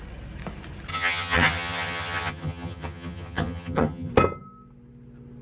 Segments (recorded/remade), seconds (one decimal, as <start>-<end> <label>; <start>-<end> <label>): 0.0-0.9 recorded; 0.9-4.1 remade; 4.1-5.4 recorded